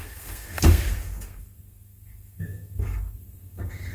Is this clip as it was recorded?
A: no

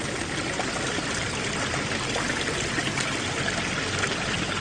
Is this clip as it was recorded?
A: yes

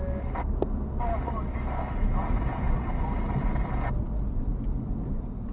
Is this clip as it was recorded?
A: yes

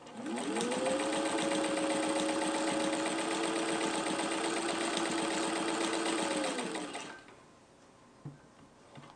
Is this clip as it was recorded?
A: yes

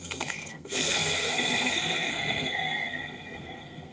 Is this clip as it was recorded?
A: no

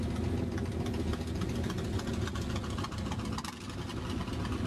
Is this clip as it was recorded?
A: yes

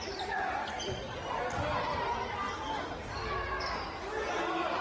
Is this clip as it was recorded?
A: yes